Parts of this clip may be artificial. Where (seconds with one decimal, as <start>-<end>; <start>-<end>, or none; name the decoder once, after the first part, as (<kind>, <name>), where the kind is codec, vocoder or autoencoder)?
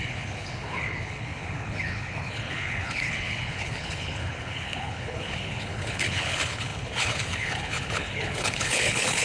0.0-9.2 (codec, HILCodec)